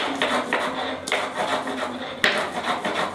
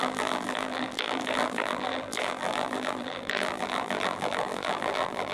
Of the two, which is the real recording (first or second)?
first